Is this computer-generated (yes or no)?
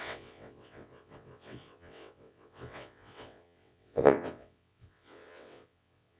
yes